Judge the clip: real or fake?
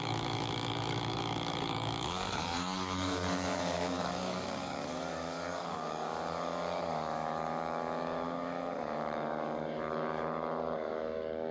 fake